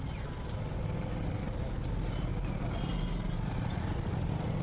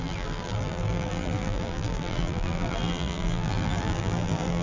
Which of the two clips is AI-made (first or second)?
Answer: second